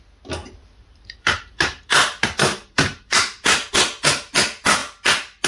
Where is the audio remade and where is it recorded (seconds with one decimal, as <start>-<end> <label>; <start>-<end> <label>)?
0.0-0.4 recorded; 0.4-3.7 remade; 3.7-5.5 recorded